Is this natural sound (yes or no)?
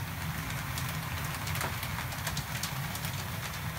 yes